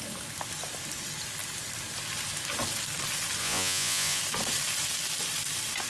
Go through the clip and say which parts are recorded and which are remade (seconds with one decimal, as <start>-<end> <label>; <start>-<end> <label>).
0.0-3.4 recorded; 3.4-4.2 remade; 4.2-5.9 recorded

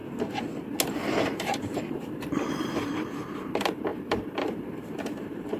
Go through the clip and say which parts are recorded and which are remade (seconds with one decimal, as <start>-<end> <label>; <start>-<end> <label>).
0.0-1.2 recorded; 1.2-5.6 remade